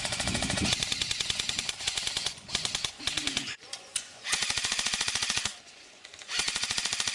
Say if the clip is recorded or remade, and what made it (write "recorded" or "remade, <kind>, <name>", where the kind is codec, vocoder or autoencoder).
remade, vocoder, Vocos